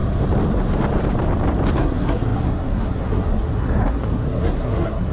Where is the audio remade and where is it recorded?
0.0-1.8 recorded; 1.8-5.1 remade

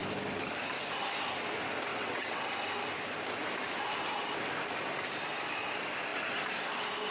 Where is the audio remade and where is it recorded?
0.0-1.9 recorded; 1.9-2.5 remade; 2.5-7.1 recorded

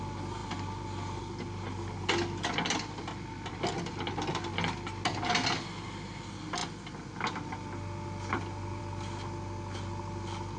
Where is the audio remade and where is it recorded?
0.0-10.6 recorded

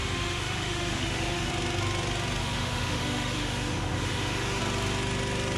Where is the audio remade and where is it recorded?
0.0-1.5 remade; 1.5-2.4 recorded; 2.4-4.6 remade; 4.6-5.6 recorded

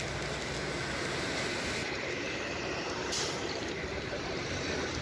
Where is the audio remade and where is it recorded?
0.0-1.8 recorded; 1.8-5.0 remade

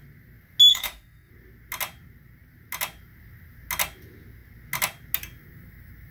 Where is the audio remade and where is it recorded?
0.0-0.7 recorded; 0.7-1.3 remade; 1.3-6.1 recorded